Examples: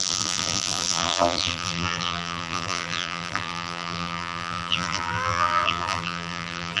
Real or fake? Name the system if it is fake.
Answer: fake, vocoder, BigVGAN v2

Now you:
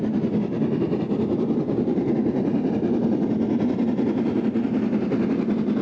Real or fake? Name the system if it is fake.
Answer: real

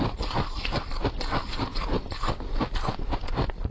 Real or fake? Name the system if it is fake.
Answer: real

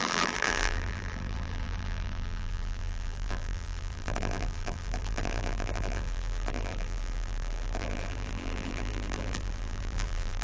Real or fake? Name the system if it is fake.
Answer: fake, vocoder, BigVGAN v2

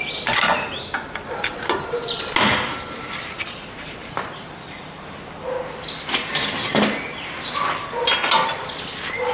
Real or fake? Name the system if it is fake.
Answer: real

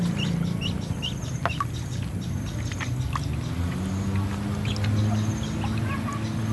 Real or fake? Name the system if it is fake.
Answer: real